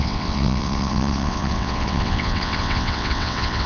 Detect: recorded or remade remade